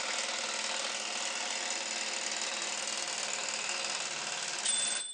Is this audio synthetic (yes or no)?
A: no